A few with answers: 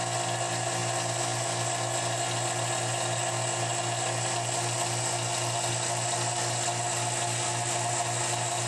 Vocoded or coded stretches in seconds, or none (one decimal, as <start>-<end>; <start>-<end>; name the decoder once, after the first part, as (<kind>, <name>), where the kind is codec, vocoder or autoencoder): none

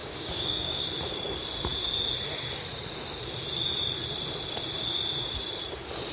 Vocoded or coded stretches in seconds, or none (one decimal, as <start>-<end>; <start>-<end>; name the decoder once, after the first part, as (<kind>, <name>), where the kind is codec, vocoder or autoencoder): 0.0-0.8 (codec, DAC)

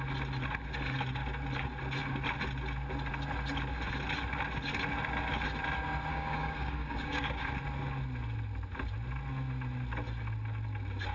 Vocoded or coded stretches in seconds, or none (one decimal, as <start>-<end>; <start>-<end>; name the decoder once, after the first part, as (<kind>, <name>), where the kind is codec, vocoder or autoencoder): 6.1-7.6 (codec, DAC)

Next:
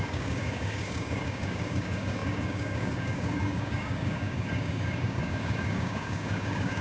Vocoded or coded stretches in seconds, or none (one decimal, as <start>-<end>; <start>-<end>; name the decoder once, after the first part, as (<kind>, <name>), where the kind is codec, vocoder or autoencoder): 0.0-6.8 (codec, DAC)

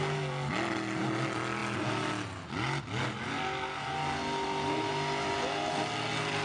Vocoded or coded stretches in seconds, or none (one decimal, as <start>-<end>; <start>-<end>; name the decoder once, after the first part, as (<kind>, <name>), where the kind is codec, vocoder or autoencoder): none

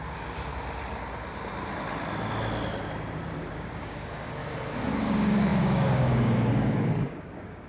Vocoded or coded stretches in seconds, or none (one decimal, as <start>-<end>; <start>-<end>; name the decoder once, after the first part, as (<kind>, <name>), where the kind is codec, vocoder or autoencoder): 0.0-0.5 (codec, DAC); 3.5-4.4; 4.9-7.7

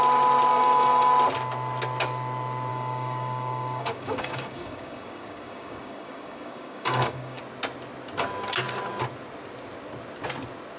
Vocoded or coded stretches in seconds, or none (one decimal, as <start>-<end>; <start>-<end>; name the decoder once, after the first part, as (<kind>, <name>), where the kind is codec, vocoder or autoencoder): 0.5-1.1 (codec, DAC); 2.7-7.4